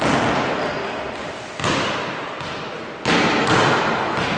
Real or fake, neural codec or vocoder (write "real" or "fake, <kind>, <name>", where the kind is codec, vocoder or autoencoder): real